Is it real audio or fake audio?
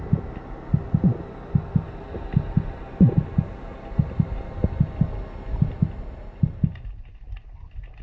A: real